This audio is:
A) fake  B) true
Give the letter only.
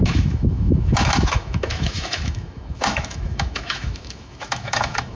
A